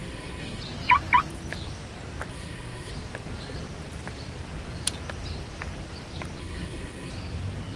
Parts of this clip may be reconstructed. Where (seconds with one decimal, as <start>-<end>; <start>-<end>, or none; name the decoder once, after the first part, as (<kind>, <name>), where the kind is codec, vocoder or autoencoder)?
0.0-0.6 (codec, SNAC); 2.3-2.9; 6.4-7.1